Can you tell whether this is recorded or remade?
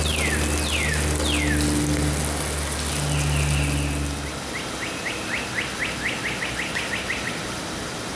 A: recorded